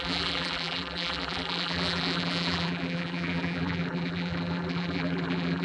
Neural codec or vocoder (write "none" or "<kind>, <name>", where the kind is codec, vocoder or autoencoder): vocoder, BigVGAN v2